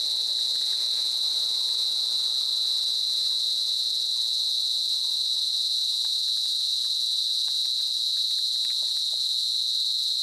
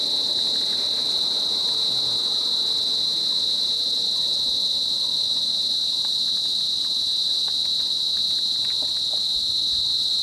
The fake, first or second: first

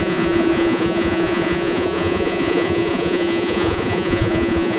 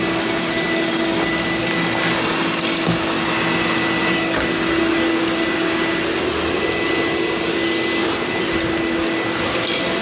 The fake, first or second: first